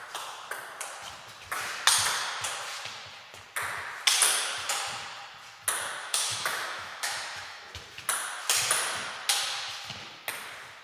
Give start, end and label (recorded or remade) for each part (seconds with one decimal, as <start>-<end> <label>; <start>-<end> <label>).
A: 0.0-6.0 recorded; 6.0-7.7 remade; 7.7-10.8 recorded